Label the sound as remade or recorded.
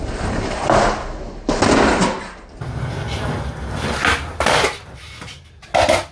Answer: recorded